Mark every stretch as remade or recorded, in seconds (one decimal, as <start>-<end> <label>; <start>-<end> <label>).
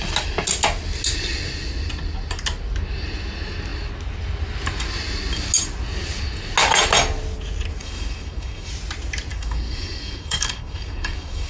0.0-7.8 recorded; 7.8-8.7 remade; 8.7-9.3 recorded; 9.3-11.5 remade